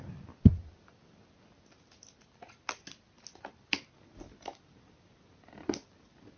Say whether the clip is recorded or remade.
recorded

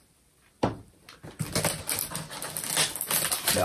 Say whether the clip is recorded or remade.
recorded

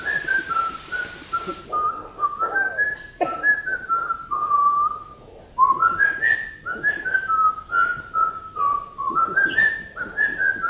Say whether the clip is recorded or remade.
recorded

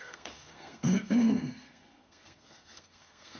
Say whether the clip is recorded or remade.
remade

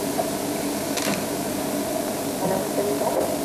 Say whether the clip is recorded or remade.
recorded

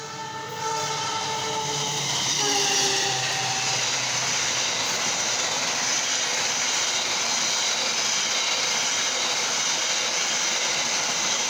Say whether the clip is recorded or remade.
recorded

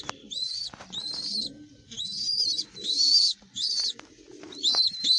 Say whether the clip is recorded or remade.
recorded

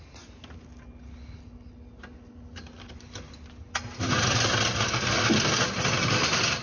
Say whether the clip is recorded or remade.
recorded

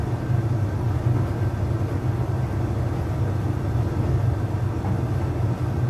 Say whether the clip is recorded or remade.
recorded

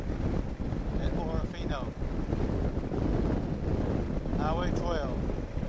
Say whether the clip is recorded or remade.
recorded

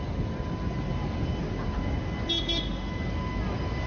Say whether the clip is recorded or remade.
recorded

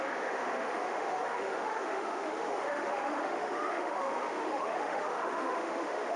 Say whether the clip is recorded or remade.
remade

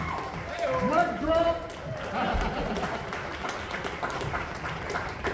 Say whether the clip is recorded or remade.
remade